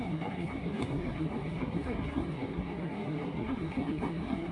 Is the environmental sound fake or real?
fake